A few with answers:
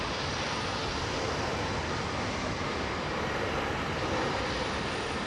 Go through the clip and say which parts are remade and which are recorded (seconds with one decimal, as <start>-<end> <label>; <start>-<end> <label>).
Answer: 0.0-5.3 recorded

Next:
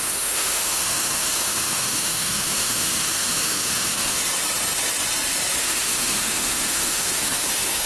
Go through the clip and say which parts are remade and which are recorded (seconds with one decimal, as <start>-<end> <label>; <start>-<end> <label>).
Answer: 0.0-4.2 remade; 4.2-5.6 recorded; 5.6-7.9 remade

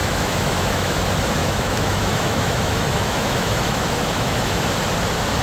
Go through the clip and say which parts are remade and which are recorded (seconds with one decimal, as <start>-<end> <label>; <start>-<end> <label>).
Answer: 0.0-1.0 remade; 1.0-1.4 recorded; 1.4-4.6 remade; 4.6-5.4 recorded

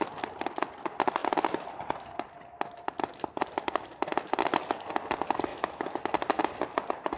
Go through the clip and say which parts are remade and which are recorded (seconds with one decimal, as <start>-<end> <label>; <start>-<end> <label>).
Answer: 0.0-5.5 recorded; 5.5-6.0 remade; 6.0-7.2 recorded

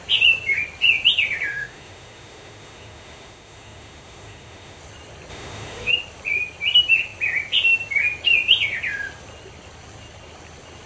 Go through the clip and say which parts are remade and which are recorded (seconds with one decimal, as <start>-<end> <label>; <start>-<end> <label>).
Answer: 0.0-1.5 recorded; 1.5-4.8 remade; 4.8-5.3 recorded; 5.3-5.9 remade; 5.9-10.9 recorded

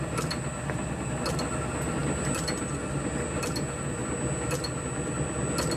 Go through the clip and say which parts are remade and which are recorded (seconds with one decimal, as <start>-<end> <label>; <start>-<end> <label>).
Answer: 0.0-5.8 recorded